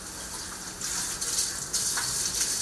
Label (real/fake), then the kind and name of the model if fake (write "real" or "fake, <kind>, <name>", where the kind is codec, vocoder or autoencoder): real